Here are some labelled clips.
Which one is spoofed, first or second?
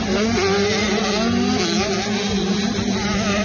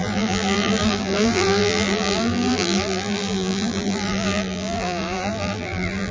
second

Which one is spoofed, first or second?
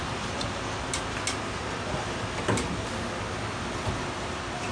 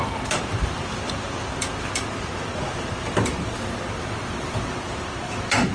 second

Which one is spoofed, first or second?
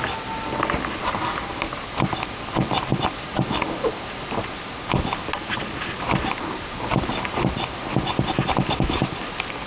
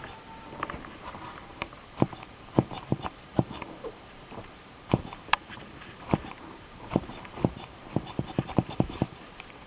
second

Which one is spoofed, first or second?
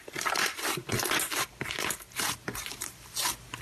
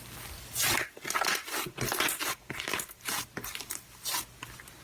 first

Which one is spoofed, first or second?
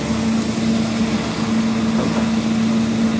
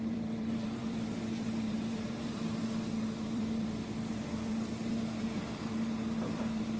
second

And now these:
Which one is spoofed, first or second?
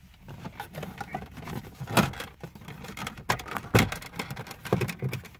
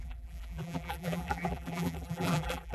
second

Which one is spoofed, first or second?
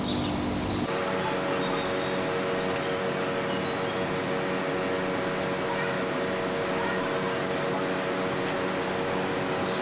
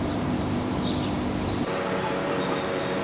second